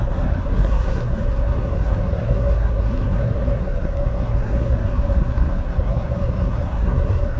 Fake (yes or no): yes